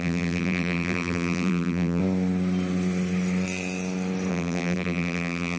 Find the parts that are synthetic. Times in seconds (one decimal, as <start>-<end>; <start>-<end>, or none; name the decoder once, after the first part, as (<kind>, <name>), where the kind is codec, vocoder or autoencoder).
0.0-2.0 (vocoder, BigVGAN v2); 4.3-5.6